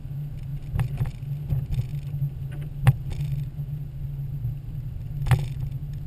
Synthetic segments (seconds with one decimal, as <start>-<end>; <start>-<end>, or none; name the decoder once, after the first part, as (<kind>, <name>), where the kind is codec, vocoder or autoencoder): none